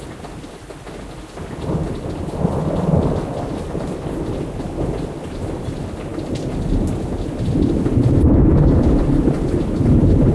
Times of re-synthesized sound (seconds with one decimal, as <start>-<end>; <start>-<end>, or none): none